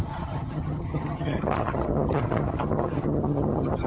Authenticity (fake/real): fake